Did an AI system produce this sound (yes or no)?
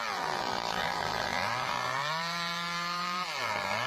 yes